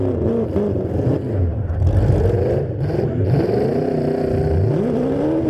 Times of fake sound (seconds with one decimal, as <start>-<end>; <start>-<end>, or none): none